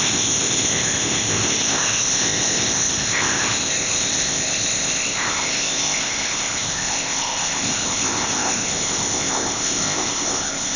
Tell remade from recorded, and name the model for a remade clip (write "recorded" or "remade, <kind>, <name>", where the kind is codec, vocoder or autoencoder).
remade, codec, ZipCodec